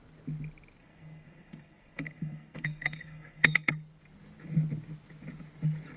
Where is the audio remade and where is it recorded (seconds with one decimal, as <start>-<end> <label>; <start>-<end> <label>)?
0.0-0.8 recorded; 0.8-3.7 remade; 3.7-6.0 recorded